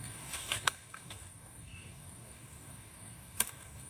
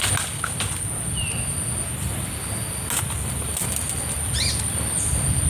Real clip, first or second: second